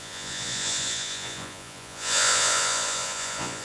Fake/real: fake